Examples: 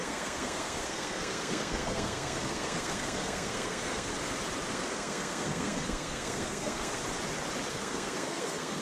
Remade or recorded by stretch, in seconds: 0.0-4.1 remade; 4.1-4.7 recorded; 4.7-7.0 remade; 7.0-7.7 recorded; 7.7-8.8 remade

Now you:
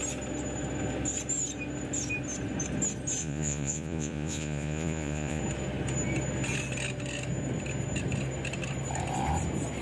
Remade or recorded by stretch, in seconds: 0.0-3.2 recorded; 3.2-5.4 remade; 5.4-9.8 recorded

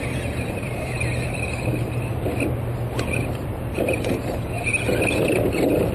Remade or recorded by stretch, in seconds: 0.0-2.1 remade; 2.1-3.3 recorded; 3.3-4.7 remade; 4.7-5.3 recorded; 5.3-5.9 remade

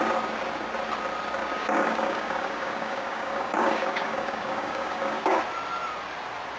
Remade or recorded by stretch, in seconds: 0.0-1.4 recorded; 1.4-5.4 remade; 5.4-6.6 recorded

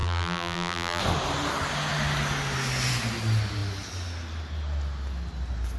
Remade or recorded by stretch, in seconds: 0.0-1.0 remade; 1.0-5.8 recorded